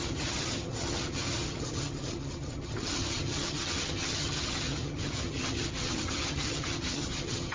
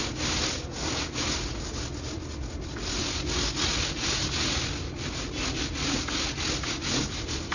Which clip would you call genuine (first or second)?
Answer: second